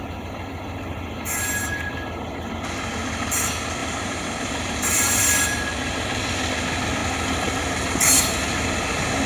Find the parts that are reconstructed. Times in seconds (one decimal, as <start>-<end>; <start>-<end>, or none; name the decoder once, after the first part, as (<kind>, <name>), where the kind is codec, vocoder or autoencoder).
3.8-5.2 (vocoder, BigVGAN v2)